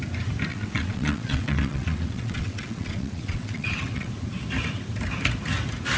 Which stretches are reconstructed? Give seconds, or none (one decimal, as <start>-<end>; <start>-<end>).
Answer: 0.5-4.1